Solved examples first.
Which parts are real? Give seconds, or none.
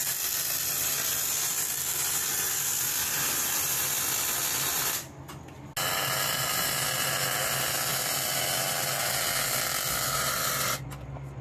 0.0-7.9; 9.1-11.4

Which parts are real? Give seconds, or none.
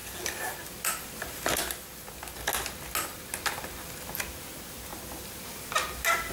0.0-4.9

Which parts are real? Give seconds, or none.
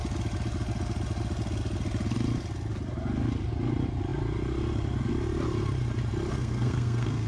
0.0-6.3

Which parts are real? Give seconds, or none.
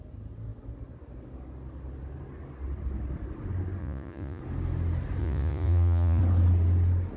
0.0-3.8; 4.4-5.2; 6.2-7.2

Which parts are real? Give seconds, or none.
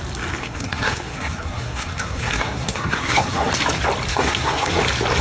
0.0-0.4; 3.5-4.1; 4.8-5.2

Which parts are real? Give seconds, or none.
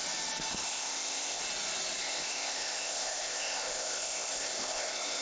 0.0-0.5; 1.4-2.0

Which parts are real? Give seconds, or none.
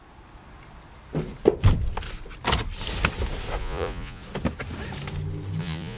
0.0-3.6; 4.2-5.6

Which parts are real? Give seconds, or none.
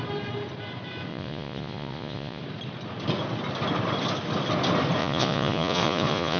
0.0-1.1; 2.4-5.0